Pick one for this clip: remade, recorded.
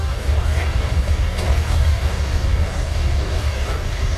remade